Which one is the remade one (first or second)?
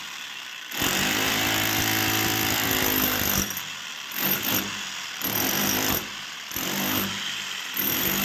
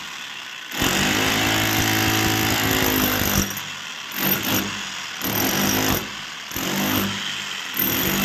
first